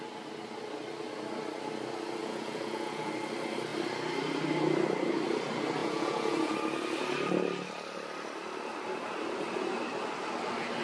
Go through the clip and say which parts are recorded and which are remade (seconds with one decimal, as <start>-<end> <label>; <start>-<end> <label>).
0.0-2.2 recorded; 2.2-3.1 remade; 3.1-5.8 recorded; 5.8-6.5 remade; 6.5-10.8 recorded